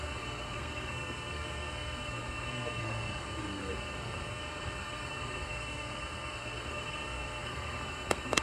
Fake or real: fake